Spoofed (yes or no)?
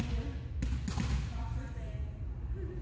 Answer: no